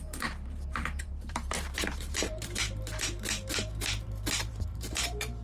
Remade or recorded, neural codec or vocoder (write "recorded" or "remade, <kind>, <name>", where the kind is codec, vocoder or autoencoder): remade, vocoder, BigVGAN v2